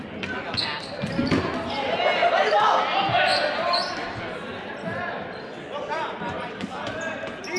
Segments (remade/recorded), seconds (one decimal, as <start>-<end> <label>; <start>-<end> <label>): 0.0-7.6 recorded